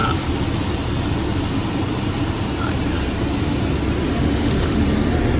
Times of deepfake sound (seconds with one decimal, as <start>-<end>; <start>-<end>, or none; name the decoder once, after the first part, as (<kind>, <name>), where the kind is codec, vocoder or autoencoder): 4.2-4.8 (autoencoder, DAC-VAE)